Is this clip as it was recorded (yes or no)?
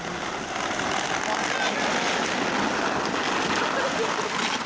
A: yes